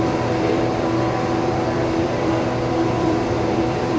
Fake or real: fake